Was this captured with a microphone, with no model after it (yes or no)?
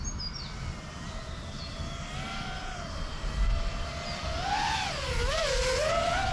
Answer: yes